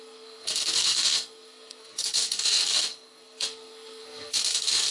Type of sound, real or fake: fake